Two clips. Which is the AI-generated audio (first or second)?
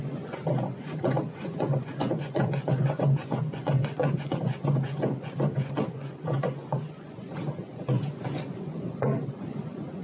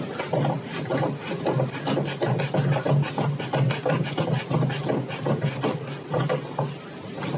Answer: first